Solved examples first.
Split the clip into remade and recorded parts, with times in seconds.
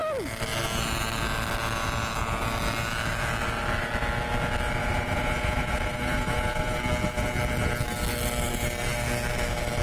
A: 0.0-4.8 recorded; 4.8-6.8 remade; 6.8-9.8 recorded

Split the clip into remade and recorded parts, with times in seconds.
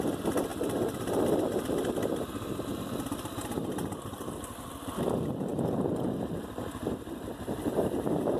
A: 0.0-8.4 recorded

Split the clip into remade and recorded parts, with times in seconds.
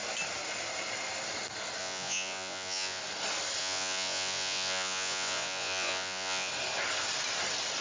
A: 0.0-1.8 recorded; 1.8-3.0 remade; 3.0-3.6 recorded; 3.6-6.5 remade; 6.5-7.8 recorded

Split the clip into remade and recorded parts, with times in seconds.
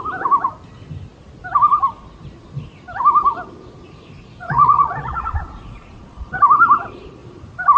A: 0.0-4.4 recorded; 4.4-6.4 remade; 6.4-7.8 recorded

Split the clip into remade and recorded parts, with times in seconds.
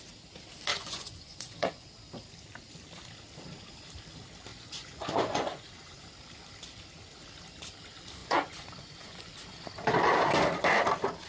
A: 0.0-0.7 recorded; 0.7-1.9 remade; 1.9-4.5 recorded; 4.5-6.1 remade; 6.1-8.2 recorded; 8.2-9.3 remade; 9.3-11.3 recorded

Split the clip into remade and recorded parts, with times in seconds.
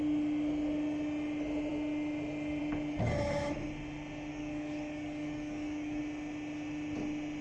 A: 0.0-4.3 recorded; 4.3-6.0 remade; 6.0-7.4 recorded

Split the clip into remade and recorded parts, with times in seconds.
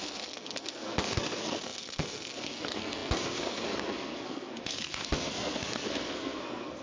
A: 0.0-6.8 remade